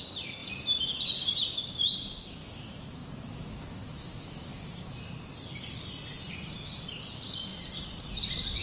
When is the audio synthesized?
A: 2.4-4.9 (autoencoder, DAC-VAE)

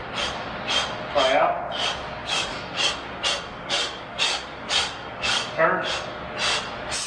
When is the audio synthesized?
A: 2.2-2.9 (codec, DAC); 3.5-5.9

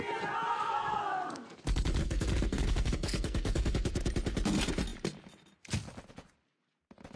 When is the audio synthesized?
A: 0.5-1.6 (codec, SNAC); 2.0-3.7

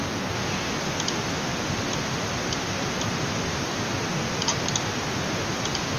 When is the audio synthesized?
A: 1.5-4.8 (vocoder, BigVGAN v2)

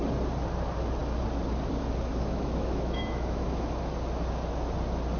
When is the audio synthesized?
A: 2.1-3.7 (autoencoder, DAC-VAE)

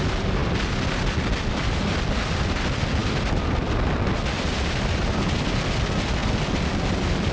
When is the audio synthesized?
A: none